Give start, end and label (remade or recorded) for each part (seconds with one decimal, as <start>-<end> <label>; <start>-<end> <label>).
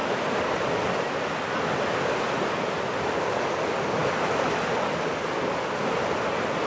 0.0-6.7 recorded